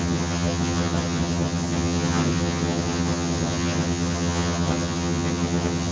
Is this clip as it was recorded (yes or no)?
no